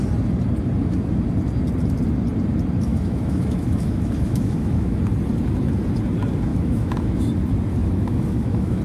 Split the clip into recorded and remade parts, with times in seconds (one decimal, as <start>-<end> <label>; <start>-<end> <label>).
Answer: 0.0-2.9 recorded; 2.9-5.0 remade; 5.0-6.5 recorded; 6.5-7.2 remade; 7.2-7.8 recorded; 7.8-8.8 remade